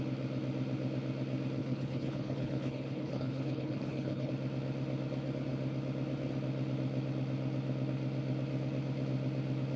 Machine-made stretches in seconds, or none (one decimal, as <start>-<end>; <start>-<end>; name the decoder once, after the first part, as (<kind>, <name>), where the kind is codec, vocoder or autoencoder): 1.6-4.3 (codec, HILCodec)